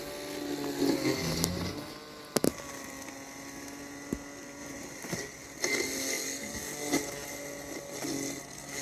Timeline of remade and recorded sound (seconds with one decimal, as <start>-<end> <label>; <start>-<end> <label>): 0.0-4.6 recorded; 4.6-5.2 remade; 5.2-8.8 recorded